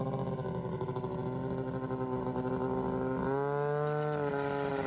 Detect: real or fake real